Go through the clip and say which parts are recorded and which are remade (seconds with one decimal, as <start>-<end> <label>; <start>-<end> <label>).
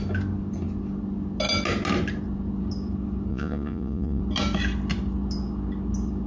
0.0-3.3 recorded; 3.3-4.2 remade; 4.2-6.3 recorded